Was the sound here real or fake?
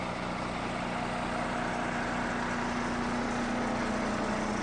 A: real